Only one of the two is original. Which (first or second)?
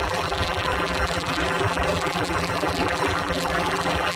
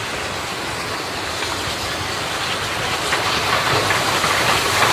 second